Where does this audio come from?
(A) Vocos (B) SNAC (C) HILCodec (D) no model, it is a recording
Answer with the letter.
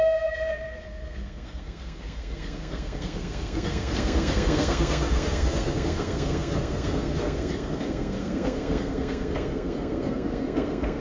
B